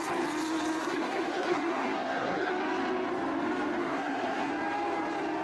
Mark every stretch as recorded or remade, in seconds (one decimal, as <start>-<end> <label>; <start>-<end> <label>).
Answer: 0.0-0.8 recorded; 0.8-2.5 remade; 2.5-3.8 recorded; 3.8-4.5 remade; 4.5-5.4 recorded